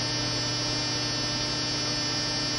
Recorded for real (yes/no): yes